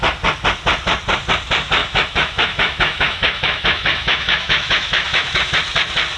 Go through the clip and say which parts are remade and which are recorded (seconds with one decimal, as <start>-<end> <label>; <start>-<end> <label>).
0.0-1.8 recorded; 1.8-5.5 remade; 5.5-6.2 recorded